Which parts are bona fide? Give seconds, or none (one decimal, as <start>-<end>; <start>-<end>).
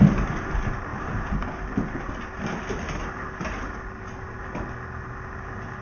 0.0-5.8